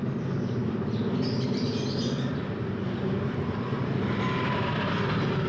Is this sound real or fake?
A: real